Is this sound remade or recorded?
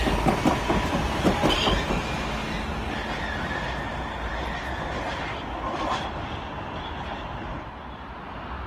recorded